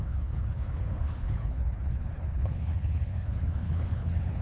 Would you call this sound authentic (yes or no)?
no